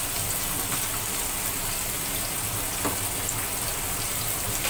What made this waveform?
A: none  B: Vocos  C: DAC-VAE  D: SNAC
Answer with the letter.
A